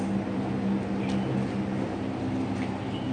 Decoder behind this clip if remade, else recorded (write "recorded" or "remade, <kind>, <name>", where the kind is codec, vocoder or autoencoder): recorded